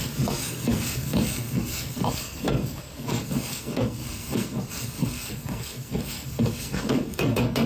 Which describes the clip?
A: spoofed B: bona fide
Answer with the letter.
A